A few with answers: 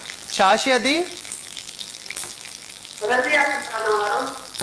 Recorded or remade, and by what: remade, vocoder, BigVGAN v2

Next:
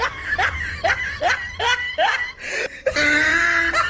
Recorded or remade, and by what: recorded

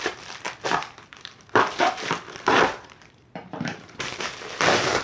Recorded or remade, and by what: remade, vocoder, BigVGAN v2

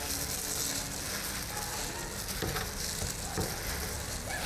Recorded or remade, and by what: recorded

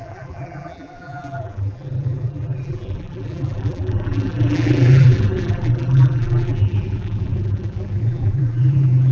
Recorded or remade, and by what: remade, vocoder, BigVGAN v2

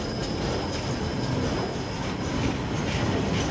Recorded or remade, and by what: recorded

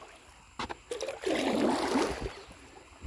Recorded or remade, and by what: recorded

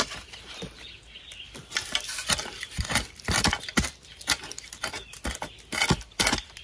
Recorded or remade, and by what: remade, vocoder, BigVGAN v2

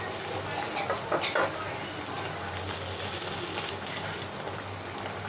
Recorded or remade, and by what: recorded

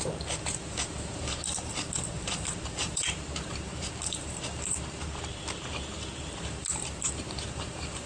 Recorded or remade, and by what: remade, vocoder, BigVGAN v2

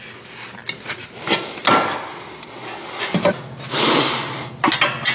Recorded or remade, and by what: recorded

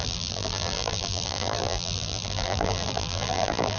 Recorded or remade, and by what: remade, vocoder, BigVGAN v2